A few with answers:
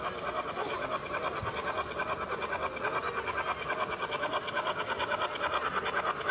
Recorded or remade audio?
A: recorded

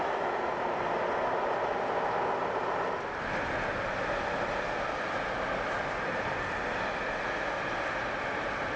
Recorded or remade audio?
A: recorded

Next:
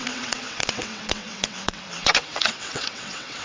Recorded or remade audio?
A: remade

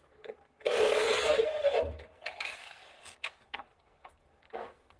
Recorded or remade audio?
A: remade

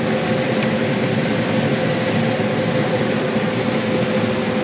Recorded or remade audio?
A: recorded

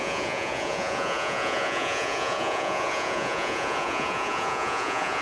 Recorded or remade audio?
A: remade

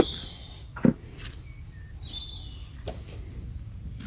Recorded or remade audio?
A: recorded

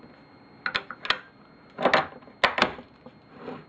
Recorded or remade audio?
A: recorded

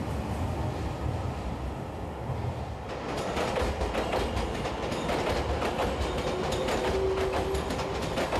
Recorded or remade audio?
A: recorded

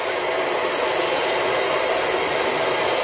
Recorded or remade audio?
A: recorded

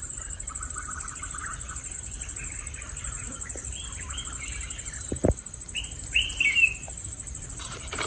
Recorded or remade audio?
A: remade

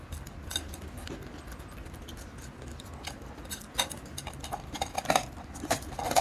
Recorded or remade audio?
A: recorded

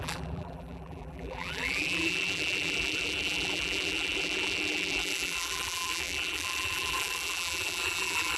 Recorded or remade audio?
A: remade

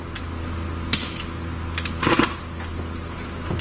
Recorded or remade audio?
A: recorded